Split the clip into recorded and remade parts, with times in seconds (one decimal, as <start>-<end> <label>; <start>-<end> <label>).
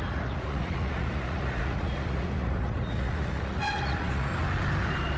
0.0-4.3 remade; 4.3-5.2 recorded